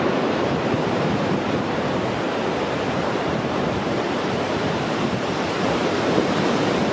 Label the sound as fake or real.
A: fake